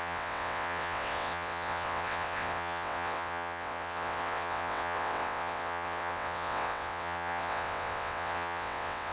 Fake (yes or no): yes